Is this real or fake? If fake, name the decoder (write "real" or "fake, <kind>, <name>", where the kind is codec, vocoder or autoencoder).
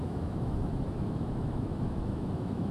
fake, autoencoder, DAC-VAE